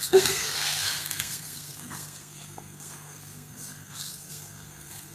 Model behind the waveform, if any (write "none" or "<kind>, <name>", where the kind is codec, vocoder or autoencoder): codec, SNAC